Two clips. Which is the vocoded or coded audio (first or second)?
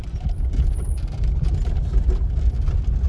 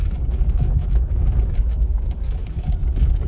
second